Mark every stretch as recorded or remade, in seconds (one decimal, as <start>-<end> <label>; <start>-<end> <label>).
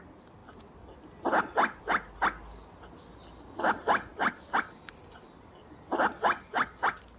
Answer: 0.0-7.2 recorded